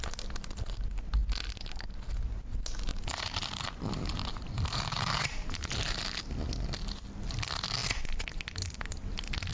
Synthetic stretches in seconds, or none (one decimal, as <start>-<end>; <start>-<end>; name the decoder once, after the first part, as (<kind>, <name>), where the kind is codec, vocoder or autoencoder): 2.9-6.2 (vocoder, BigVGAN v2)